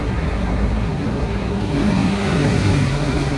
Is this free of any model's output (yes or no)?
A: no